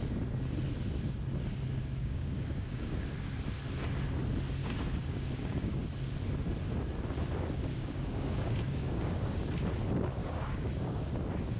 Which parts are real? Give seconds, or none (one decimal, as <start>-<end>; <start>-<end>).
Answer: 0.0-2.0; 3.0-4.6; 5.8-7.7; 9.4-10.2; 11.1-11.6